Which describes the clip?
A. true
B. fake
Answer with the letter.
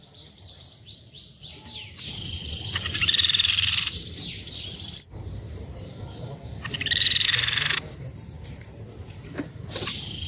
B